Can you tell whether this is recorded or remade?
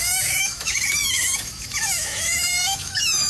remade